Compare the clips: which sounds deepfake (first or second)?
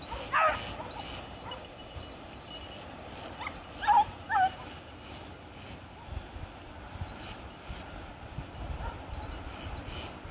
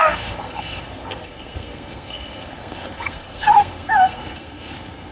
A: second